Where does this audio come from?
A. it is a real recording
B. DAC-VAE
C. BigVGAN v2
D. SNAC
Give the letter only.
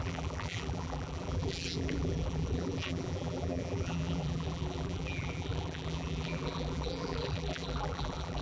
C